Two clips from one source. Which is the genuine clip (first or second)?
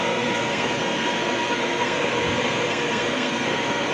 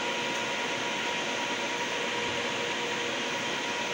second